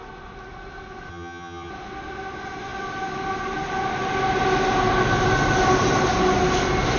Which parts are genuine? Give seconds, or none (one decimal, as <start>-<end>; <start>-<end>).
0.0-1.1; 1.7-7.0